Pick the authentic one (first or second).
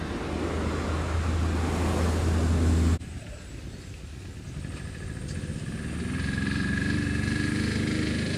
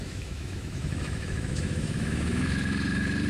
first